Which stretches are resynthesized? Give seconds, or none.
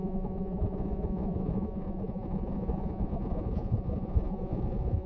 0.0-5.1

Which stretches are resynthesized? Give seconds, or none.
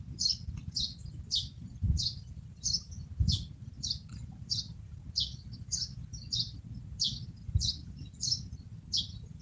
none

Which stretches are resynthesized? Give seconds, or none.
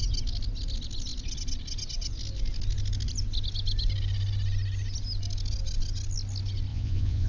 6.7-7.3